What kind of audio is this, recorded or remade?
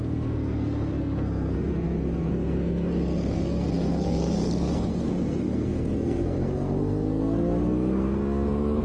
remade